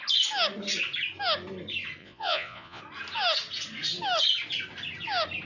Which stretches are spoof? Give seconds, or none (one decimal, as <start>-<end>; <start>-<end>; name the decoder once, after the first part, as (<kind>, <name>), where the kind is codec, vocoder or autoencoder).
2.0-2.8 (vocoder, Vocos)